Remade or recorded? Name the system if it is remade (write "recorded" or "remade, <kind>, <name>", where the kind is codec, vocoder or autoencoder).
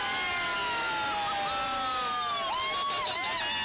recorded